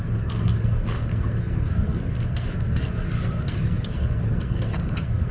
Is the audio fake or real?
fake